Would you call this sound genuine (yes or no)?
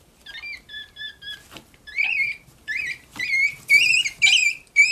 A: no